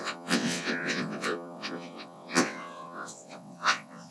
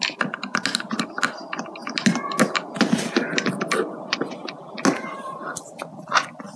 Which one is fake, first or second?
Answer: first